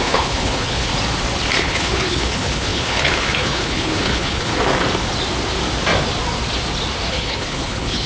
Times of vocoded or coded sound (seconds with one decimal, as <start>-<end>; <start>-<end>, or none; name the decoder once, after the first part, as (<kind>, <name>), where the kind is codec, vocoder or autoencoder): 0.0-0.9 (codec, HILCodec); 1.6-4.5; 7.1-8.1